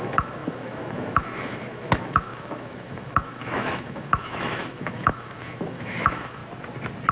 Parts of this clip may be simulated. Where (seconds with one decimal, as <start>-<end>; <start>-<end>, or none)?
0.0-6.4